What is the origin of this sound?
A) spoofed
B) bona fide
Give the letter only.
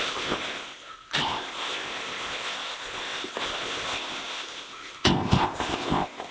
A